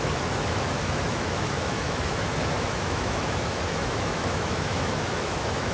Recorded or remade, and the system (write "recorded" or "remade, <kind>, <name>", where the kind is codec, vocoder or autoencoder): remade, autoencoder, DAC-VAE